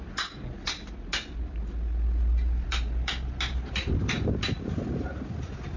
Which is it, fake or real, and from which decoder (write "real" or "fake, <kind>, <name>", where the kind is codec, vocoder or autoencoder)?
real